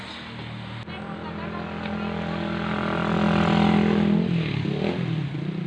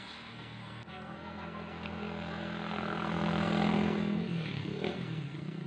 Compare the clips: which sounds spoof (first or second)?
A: second